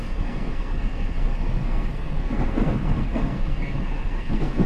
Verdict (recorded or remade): remade